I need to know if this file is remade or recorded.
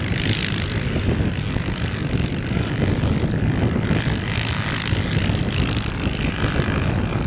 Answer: recorded